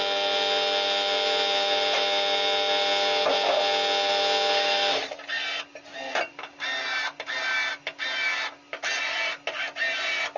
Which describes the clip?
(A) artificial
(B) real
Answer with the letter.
B